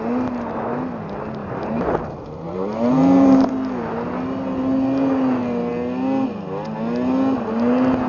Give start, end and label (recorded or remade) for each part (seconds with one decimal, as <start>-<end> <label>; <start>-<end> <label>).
0.0-1.4 recorded; 1.4-3.5 remade; 3.5-8.1 recorded